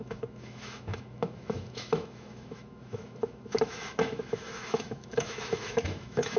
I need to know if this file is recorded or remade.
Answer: remade